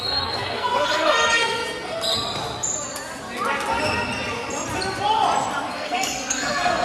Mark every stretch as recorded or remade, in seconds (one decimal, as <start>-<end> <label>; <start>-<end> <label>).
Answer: 0.0-1.6 remade; 1.6-5.7 recorded; 5.7-6.8 remade